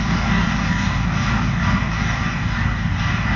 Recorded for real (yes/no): no